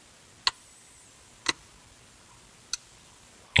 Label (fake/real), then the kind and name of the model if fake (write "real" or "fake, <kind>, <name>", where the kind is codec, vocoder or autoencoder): real